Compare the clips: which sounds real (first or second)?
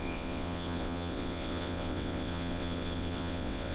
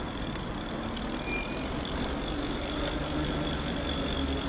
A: second